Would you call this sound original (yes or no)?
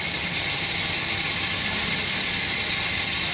yes